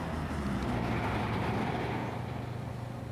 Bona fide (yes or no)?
yes